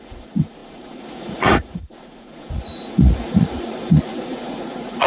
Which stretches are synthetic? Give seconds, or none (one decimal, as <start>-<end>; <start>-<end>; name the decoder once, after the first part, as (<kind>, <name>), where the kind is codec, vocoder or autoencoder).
0.0-5.1 (vocoder, Vocos)